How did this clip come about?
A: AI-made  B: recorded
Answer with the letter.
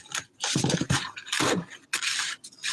B